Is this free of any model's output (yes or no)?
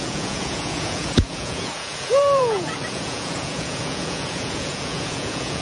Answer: no